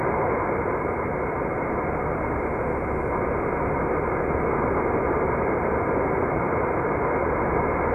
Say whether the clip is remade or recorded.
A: recorded